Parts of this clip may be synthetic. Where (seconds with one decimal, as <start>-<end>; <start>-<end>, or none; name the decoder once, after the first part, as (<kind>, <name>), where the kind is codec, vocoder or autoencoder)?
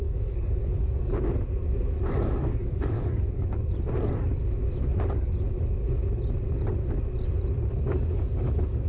0.0-1.1 (codec, DAC); 2.4-3.6; 7.8-8.9